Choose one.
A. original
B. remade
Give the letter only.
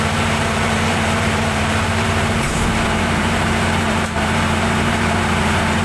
B